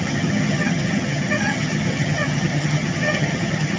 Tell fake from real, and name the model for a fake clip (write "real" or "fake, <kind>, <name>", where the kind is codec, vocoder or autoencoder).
fake, vocoder, HiFi-GAN